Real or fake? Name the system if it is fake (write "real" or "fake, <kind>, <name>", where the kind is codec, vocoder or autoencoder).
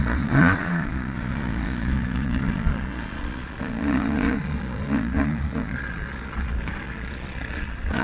fake, vocoder, Vocos